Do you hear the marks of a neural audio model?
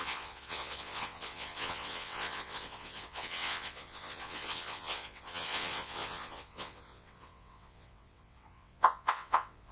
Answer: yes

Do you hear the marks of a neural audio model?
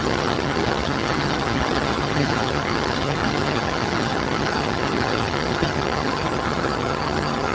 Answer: yes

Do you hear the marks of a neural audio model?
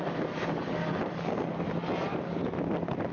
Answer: no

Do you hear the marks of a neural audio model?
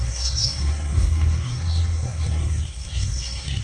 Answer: yes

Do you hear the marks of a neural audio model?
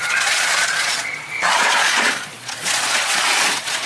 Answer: yes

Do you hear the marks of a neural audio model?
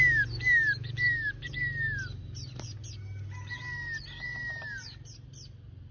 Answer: no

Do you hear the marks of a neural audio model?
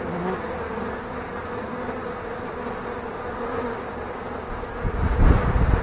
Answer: no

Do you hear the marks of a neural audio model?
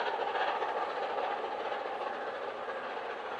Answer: no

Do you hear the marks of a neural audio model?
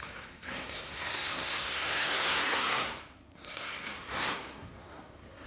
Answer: yes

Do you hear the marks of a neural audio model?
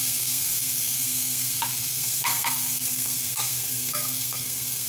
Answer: yes